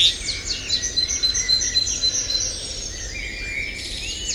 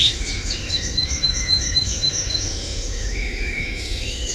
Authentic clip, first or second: first